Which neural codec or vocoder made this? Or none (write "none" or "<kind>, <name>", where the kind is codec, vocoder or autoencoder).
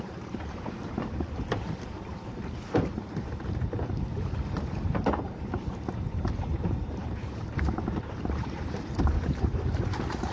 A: vocoder, BigVGAN v2